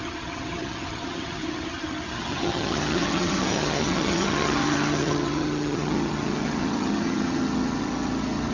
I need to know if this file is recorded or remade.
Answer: remade